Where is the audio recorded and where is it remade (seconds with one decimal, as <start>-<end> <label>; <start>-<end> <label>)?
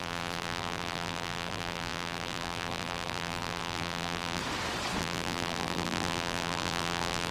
0.0-4.4 remade; 4.4-5.0 recorded; 5.0-7.3 remade